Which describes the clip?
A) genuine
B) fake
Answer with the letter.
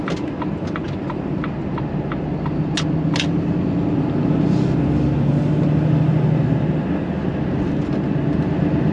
A